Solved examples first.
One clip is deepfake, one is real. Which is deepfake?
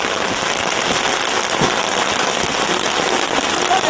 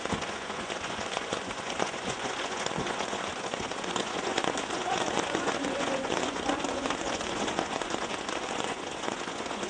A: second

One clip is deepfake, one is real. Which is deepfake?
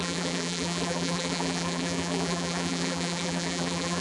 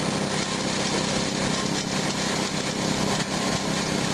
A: first